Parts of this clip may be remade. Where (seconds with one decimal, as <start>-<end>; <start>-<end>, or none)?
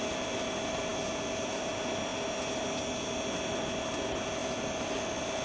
none